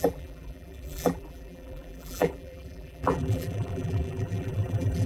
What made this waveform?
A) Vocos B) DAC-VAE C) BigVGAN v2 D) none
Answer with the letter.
C